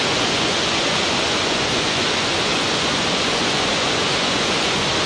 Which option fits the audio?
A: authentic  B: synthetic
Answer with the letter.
B